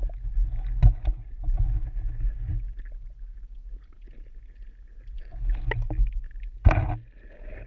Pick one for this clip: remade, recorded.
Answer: recorded